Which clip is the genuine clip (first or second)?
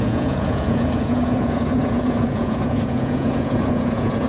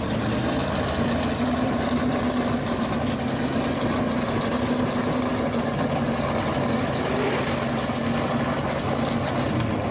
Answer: second